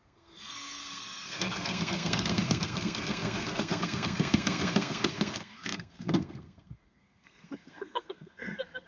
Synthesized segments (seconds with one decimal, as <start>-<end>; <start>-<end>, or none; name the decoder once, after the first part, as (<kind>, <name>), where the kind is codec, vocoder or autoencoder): 0.0-8.9 (codec, SNAC)